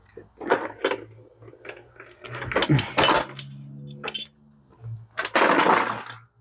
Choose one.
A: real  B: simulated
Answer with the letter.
A